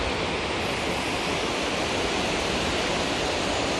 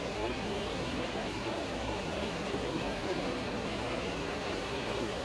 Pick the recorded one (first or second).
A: first